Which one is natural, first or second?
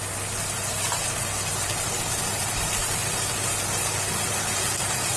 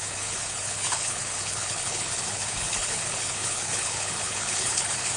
first